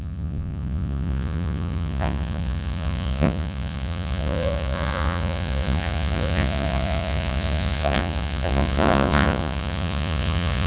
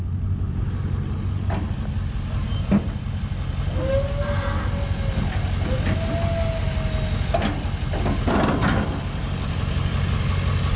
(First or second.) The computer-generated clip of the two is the first